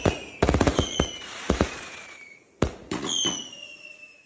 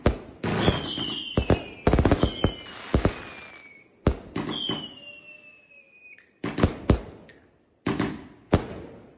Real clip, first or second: second